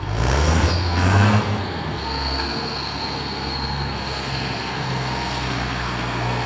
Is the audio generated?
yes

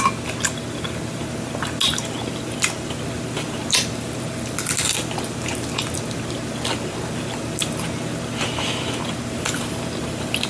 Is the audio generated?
no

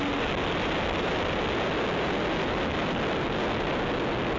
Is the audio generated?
no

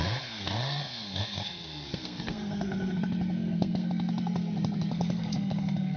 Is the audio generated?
yes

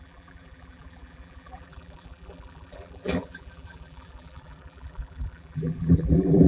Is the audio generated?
yes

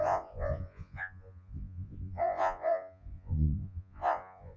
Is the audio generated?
yes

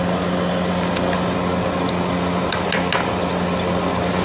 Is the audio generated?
no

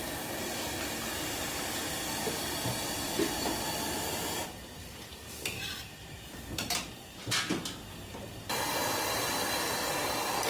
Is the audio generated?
yes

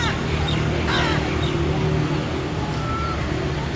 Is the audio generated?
no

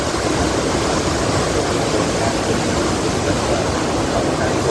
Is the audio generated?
no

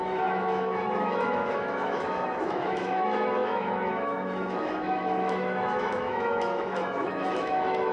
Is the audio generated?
yes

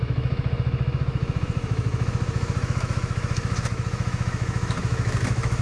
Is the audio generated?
yes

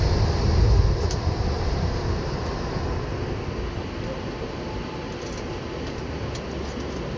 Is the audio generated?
no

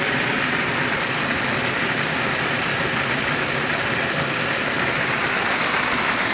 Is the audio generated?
no